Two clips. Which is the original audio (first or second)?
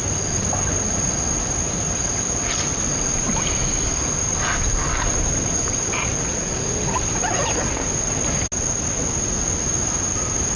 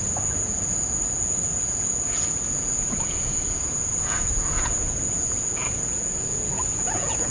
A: first